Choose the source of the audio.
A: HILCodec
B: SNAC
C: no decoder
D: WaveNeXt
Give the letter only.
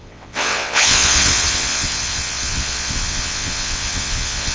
D